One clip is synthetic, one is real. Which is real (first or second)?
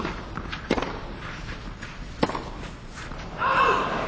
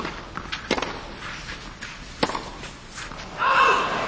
second